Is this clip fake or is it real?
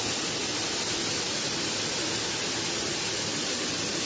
real